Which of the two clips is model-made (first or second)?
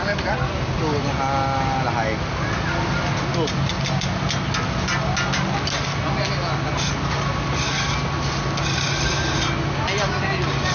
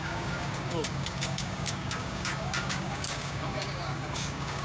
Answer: second